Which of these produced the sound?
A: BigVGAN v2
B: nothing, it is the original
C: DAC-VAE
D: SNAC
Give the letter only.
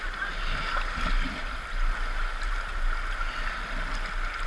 B